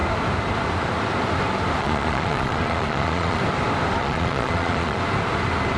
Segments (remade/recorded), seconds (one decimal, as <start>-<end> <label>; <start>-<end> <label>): 0.0-1.8 recorded; 1.8-3.4 remade; 3.4-4.0 recorded; 4.0-5.0 remade; 5.0-5.8 recorded